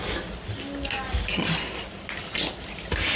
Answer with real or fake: real